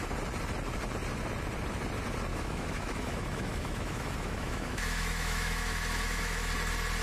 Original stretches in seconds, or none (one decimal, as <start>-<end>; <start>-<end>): 0.0-2.3; 6.5-7.0